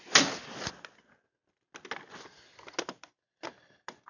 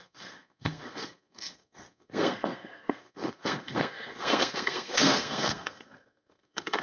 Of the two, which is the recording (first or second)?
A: first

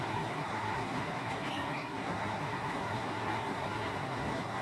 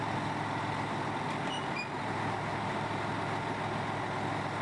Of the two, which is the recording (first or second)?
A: second